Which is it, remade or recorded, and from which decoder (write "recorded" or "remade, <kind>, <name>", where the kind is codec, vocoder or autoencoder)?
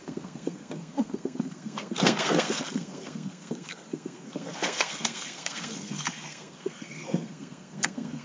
remade, codec, SNAC